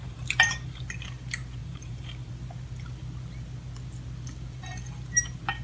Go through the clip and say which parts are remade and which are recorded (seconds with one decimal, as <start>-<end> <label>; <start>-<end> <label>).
0.0-0.8 remade; 0.8-1.6 recorded; 1.6-2.3 remade; 2.3-5.6 recorded